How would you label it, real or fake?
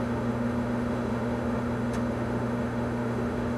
fake